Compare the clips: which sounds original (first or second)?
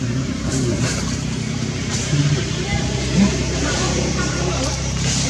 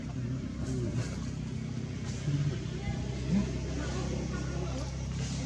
second